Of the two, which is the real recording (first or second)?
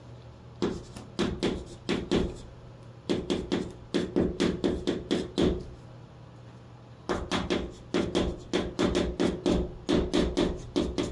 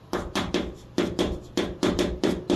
first